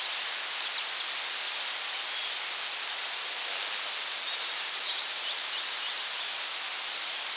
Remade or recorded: recorded